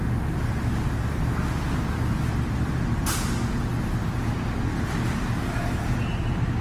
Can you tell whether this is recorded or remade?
recorded